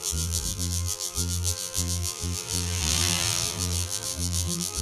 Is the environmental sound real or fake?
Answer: fake